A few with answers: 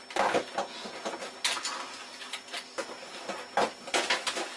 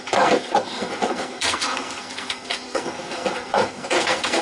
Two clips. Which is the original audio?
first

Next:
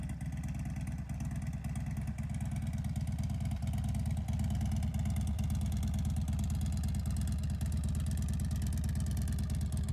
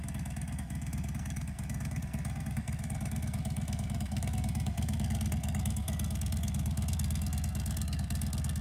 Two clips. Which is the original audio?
first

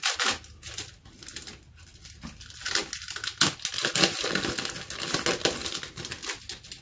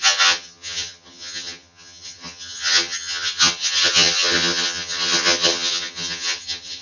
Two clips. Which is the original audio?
first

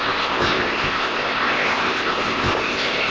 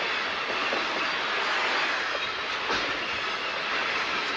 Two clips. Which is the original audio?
second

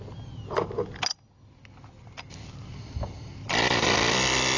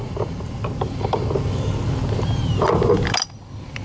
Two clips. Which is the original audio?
first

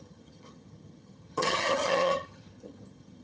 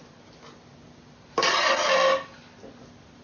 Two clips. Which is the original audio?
second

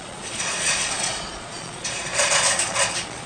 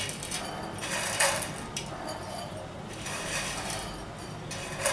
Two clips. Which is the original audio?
second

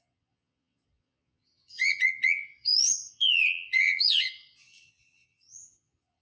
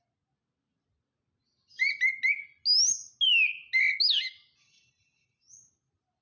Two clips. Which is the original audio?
second